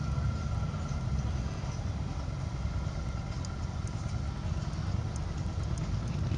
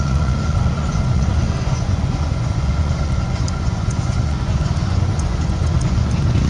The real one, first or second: first